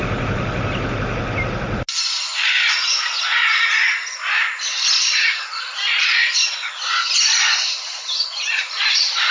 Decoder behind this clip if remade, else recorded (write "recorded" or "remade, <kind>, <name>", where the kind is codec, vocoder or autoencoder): recorded